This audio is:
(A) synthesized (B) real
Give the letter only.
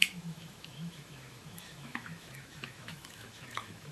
A